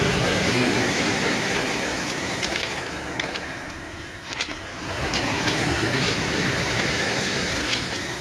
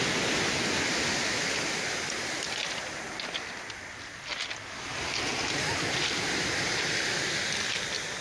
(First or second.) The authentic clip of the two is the second